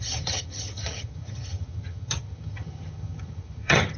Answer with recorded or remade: remade